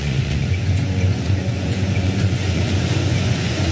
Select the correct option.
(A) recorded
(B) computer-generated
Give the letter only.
B